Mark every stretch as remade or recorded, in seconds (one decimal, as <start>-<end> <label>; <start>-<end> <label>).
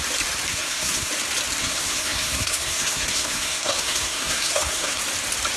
0.0-0.5 recorded; 0.5-1.1 remade; 1.1-1.6 recorded; 1.6-5.0 remade; 5.0-5.6 recorded